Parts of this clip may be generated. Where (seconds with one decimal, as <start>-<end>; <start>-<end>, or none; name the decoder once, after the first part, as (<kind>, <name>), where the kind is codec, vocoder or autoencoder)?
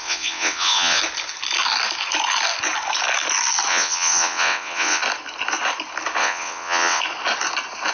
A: 0.0-1.0 (vocoder, WaveNeXt); 3.7-5.0; 6.2-7.0